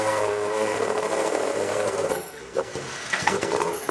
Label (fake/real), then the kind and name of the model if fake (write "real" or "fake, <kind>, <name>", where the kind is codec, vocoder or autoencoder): fake, codec, SNAC